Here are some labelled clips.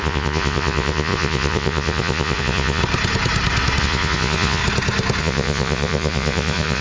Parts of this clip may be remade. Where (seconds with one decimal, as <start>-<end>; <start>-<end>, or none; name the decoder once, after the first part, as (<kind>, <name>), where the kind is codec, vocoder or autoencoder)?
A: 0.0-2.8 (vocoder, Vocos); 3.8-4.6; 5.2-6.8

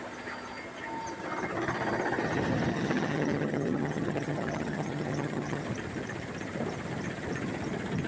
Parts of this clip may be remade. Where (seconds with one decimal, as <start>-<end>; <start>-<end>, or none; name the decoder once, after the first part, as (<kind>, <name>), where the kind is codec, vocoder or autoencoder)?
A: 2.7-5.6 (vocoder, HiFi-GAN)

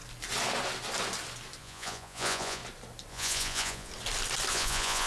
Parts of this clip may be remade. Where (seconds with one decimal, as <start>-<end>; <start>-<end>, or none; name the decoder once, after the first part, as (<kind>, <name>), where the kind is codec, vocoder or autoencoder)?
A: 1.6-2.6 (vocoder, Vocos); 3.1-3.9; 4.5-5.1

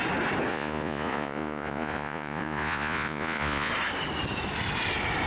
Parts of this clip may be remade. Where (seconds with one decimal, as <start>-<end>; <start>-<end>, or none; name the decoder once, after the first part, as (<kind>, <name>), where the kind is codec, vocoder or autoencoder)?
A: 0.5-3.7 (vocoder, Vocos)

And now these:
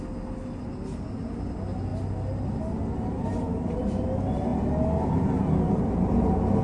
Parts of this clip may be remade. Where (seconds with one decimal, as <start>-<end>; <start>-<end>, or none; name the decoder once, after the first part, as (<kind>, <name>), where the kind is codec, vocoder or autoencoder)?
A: none

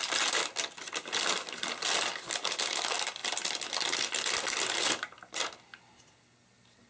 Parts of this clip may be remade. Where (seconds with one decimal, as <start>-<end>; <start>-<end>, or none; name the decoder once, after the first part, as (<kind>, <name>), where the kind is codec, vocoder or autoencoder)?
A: none

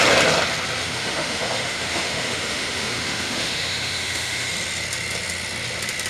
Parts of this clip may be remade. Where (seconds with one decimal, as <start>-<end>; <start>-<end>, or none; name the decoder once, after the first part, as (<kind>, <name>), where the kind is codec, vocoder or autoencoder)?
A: 0.8-4.5 (autoencoder, DAC-VAE)